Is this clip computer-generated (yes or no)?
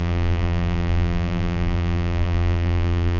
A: yes